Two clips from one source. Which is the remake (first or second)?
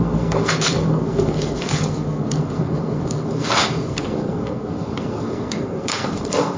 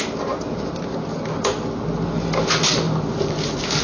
first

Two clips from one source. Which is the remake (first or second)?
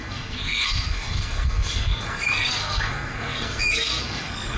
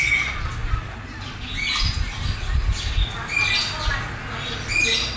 first